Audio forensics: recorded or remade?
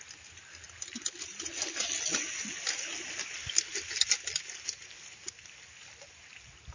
recorded